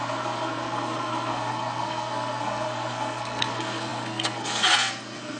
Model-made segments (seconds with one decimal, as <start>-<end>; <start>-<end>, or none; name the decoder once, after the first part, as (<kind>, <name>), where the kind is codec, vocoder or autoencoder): 0.0-5.4 (codec, SNAC)

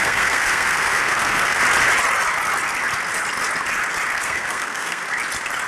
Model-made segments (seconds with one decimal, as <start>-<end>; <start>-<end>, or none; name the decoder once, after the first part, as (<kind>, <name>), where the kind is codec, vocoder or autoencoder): 0.0-1.6 (codec, SNAC); 4.1-5.0

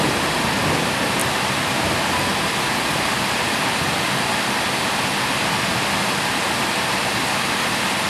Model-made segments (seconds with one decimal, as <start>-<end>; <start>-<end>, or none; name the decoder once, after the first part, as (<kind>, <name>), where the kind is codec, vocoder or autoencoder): 0.0-1.2 (vocoder, BigVGAN v2); 6.1-8.1

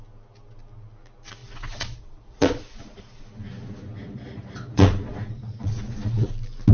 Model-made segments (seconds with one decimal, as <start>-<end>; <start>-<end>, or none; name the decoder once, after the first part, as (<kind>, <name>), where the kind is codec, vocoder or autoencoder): 1.4-3.2 (vocoder, Vocos); 4.0-6.3

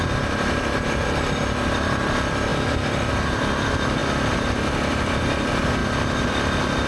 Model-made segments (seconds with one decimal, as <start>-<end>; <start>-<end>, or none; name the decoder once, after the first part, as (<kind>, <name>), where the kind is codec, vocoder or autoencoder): 0.0-4.0 (vocoder, BigVGAN v2); 5.2-5.8; 6.3-6.9

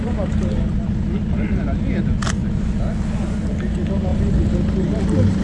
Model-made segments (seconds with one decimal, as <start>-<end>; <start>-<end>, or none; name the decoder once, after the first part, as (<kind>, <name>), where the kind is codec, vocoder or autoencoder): none

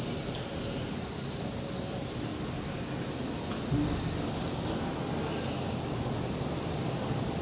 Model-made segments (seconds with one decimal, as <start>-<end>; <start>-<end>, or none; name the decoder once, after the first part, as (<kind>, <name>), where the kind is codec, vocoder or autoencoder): none

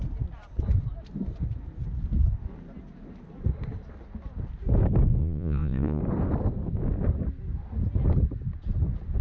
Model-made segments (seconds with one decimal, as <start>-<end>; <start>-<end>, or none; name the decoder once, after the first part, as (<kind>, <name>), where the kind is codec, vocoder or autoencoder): 5.2-6.0 (vocoder, Vocos)